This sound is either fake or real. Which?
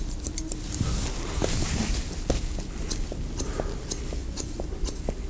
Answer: real